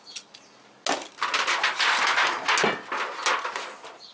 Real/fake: real